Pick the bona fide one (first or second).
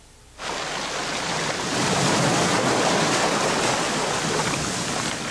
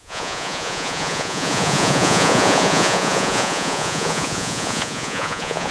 first